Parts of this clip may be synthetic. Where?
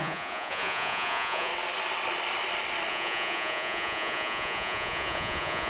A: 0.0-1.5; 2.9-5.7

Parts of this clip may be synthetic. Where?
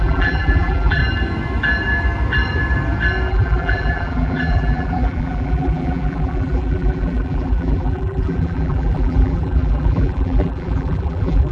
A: 0.0-1.0; 3.3-11.5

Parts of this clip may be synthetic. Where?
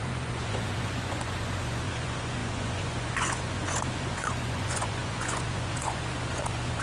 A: 0.0-6.8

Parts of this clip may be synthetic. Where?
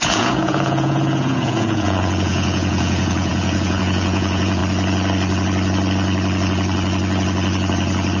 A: 0.0-4.6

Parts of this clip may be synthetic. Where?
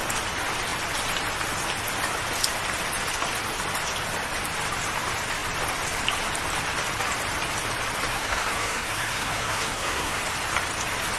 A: 8.1-10.2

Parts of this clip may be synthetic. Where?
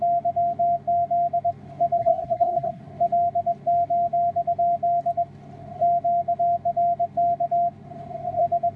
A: 2.0-2.8